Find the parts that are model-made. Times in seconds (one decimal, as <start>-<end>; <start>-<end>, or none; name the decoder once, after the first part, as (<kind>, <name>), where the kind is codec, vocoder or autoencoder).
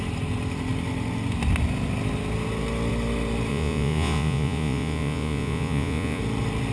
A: 3.5-6.2 (vocoder, Vocos)